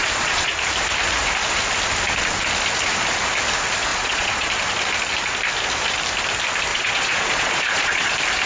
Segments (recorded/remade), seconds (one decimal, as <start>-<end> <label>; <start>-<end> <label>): 0.0-0.5 remade; 0.5-3.9 recorded; 3.9-4.5 remade; 4.5-6.7 recorded; 6.7-8.1 remade; 8.1-8.5 recorded